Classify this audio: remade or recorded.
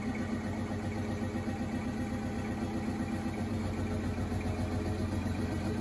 recorded